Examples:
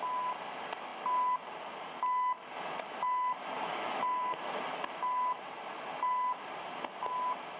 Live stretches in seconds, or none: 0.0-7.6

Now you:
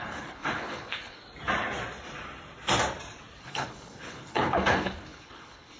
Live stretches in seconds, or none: 1.2-3.4

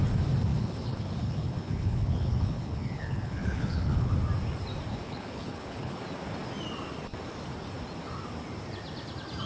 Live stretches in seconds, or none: 0.0-0.5; 4.1-4.9; 6.0-9.5

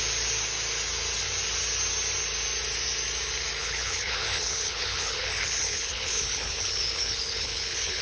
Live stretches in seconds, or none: 0.0-3.6

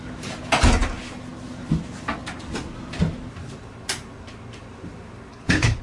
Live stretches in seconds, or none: 0.0-5.3

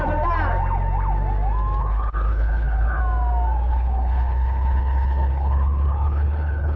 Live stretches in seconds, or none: 0.0-1.8; 3.0-3.7

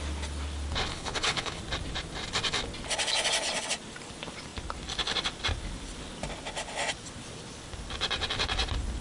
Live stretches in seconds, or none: 0.0-0.9; 1.6-9.0

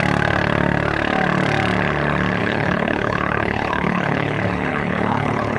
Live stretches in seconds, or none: 0.0-2.4